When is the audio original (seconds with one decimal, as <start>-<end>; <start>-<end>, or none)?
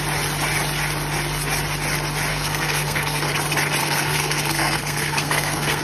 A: 0.0-2.3; 3.3-3.8